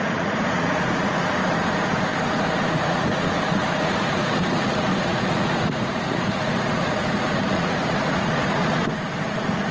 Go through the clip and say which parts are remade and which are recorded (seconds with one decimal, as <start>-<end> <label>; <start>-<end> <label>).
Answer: 0.0-1.4 remade; 1.4-2.3 recorded; 2.3-9.7 remade